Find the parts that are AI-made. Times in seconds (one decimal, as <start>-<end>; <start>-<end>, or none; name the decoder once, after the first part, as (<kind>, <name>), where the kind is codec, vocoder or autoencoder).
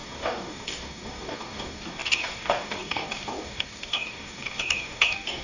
0.0-5.4 (codec, DAC)